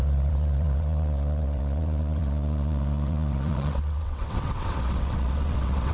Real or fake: fake